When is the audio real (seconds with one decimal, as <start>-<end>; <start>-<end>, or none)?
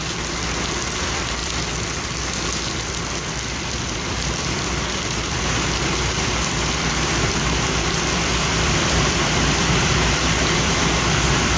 none